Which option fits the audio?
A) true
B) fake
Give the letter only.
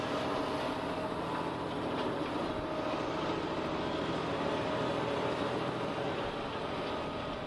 A